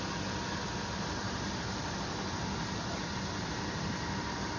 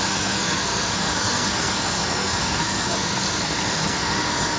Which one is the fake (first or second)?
second